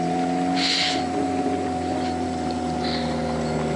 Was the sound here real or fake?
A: real